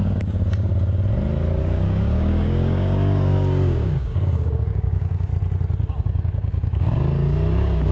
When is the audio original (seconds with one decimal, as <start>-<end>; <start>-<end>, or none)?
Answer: 0.7-1.6; 5.3-5.9